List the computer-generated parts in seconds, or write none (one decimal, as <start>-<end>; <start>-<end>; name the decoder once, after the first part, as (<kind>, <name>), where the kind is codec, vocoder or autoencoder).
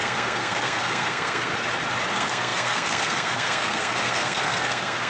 0.0-1.5 (codec, SNAC); 2.1-5.1